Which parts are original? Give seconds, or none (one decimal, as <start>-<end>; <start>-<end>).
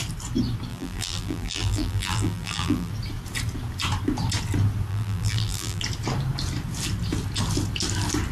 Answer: 0.0-0.7; 2.9-4.9; 5.8-8.3